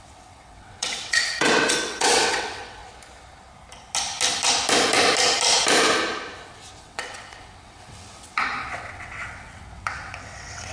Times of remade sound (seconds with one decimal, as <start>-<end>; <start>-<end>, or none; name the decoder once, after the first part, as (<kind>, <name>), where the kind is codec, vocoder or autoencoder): 0.0-2.8 (vocoder, WaveNeXt); 6.8-10.7